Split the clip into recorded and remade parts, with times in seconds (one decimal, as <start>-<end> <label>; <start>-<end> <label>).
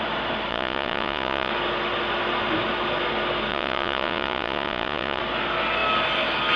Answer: 0.0-0.5 recorded; 0.5-1.5 remade; 1.5-3.5 recorded; 3.5-5.2 remade; 5.2-6.6 recorded